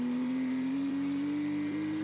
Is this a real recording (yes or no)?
no